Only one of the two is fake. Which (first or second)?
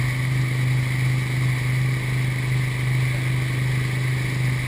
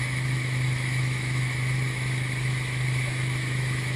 second